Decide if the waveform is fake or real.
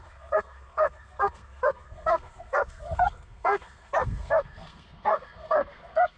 fake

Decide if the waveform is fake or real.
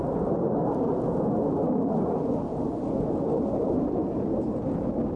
real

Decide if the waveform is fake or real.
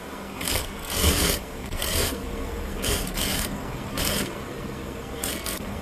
fake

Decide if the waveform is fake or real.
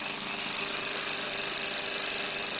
real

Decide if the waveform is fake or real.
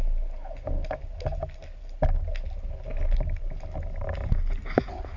real